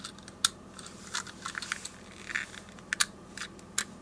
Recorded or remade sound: recorded